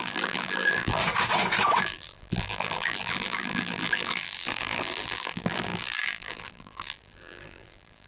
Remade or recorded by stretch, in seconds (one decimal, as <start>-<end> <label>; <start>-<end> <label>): 0.0-1.0 remade; 1.0-1.8 recorded; 1.8-8.1 remade